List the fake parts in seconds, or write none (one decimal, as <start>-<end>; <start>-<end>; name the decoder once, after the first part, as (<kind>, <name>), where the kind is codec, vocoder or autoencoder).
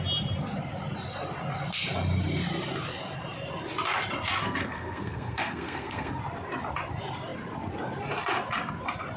4.4-6.1 (codec, SNAC)